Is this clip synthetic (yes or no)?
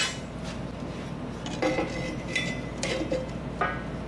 no